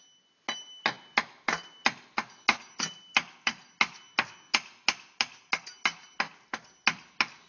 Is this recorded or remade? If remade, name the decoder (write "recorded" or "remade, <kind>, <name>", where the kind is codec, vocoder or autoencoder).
recorded